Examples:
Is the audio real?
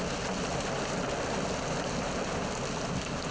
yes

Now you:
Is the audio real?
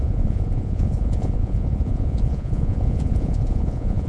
no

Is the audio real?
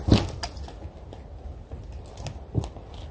yes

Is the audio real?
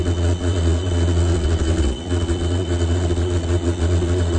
no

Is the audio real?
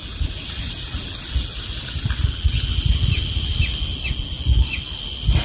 yes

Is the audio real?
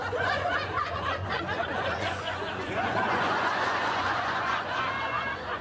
no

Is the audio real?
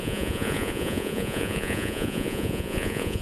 no